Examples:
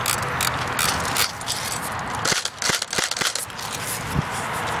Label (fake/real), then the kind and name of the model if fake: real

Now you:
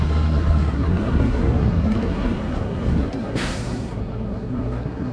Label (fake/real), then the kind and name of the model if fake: fake, codec, SNAC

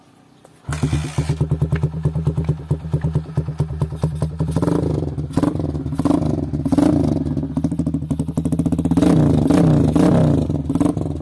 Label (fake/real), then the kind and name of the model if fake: real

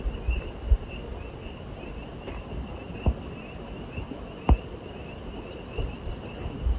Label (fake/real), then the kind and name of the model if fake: real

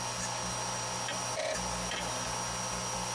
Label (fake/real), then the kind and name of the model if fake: real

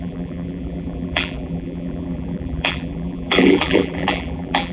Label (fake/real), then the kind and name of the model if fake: fake, vocoder, BigVGAN v2